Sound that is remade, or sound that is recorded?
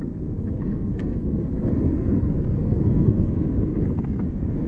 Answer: remade